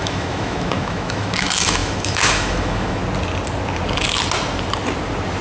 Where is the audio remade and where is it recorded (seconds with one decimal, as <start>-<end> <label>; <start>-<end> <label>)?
0.0-3.0 remade; 3.0-5.4 recorded